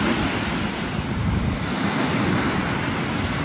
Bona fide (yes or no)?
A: yes